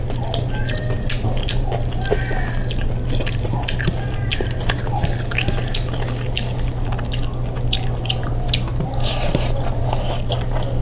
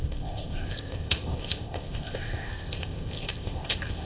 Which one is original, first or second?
first